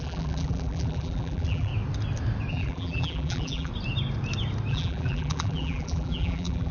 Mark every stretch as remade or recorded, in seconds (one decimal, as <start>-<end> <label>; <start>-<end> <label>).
0.0-1.7 remade; 1.7-2.5 recorded; 2.5-3.7 remade; 3.7-4.7 recorded; 4.7-6.7 remade